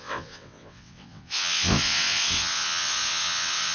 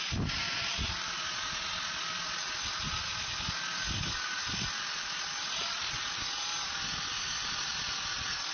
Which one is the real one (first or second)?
second